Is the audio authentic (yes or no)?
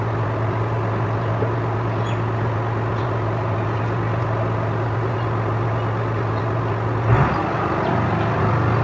yes